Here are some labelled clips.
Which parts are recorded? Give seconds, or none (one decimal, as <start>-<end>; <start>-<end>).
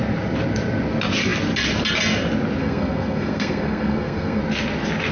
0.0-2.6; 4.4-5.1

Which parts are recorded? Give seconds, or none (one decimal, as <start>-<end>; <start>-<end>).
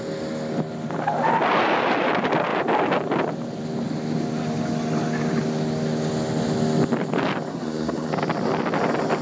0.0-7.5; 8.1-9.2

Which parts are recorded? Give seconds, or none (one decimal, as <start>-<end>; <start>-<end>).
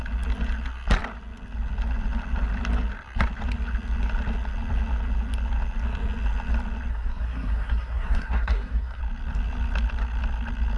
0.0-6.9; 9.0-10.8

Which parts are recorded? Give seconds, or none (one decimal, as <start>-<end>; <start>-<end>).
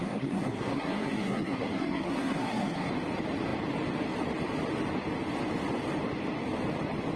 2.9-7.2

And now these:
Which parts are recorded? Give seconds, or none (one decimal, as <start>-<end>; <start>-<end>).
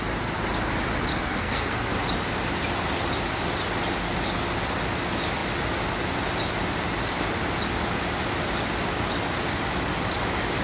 0.0-1.1; 1.9-10.6